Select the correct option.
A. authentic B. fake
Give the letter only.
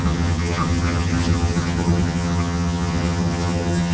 B